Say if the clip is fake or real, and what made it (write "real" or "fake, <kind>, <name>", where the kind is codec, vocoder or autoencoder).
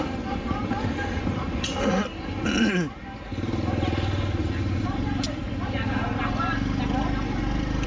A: real